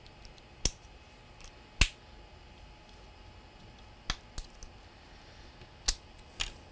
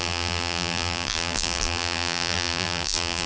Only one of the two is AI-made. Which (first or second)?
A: second